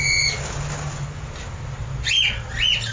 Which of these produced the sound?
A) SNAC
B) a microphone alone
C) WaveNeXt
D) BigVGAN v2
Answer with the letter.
B